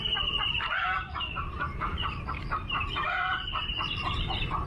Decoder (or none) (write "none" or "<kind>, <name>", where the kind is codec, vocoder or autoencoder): vocoder, BigVGAN v2